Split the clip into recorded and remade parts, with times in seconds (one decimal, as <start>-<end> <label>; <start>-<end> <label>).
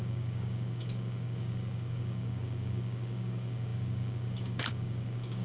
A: 0.0-5.4 remade